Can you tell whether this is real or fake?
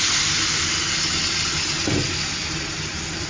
real